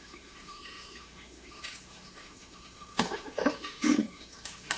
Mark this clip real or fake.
fake